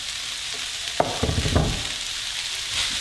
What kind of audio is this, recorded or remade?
recorded